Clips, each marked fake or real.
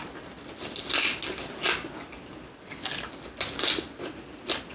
real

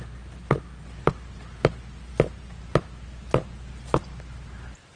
real